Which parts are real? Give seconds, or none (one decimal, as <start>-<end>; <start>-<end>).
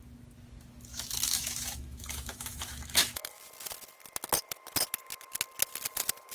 0.0-0.9; 3.4-6.3